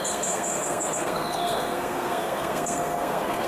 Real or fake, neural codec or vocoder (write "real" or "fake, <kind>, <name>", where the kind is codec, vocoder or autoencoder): fake, codec, SNAC